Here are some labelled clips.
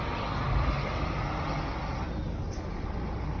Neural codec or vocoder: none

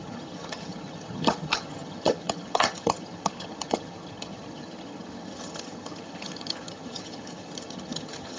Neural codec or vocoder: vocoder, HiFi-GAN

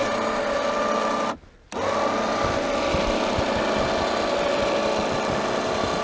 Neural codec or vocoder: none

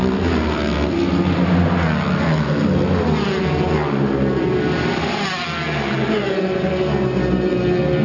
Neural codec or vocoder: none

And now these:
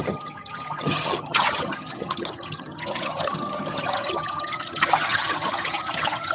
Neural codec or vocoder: vocoder, HiFi-GAN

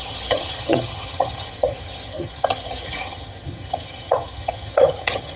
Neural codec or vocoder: vocoder, HiFi-GAN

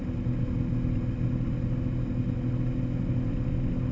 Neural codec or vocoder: none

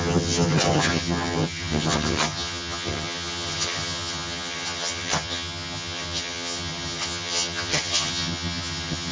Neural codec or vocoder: vocoder, HiFi-GAN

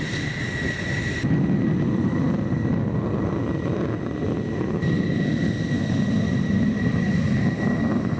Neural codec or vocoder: none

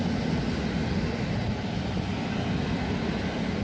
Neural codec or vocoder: none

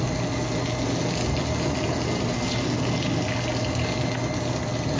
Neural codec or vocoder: none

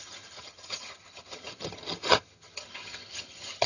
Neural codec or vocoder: vocoder, HiFi-GAN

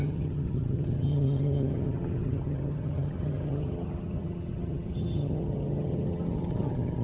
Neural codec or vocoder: vocoder, HiFi-GAN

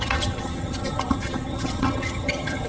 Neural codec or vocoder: vocoder, HiFi-GAN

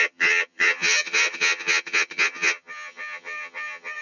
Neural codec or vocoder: vocoder, HiFi-GAN